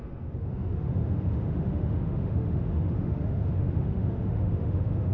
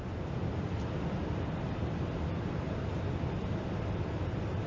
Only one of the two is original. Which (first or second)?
second